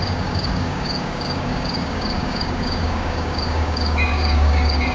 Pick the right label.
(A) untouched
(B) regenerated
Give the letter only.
B